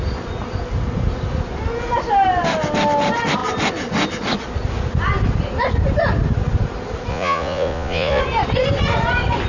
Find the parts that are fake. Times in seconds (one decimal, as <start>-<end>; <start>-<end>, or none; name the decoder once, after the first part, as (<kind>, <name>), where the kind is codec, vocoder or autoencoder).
7.1-8.2 (vocoder, Vocos)